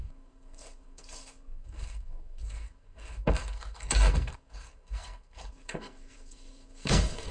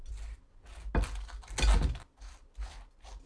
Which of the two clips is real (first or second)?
second